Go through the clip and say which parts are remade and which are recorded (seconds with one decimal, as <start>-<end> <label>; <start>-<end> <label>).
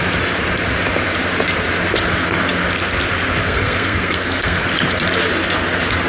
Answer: 0.0-3.4 recorded; 3.4-4.7 remade; 4.7-6.1 recorded